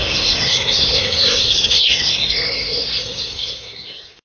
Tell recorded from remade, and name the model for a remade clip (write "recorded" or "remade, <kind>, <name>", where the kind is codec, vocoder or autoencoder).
remade, codec, SNAC